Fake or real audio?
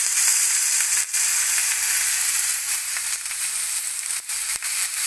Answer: fake